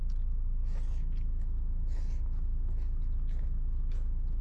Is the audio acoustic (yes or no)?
yes